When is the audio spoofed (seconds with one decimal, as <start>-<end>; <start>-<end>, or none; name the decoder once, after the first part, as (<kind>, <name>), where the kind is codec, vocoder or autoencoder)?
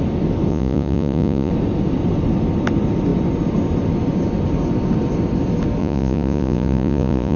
0.5-1.5 (vocoder, Vocos); 5.8-7.4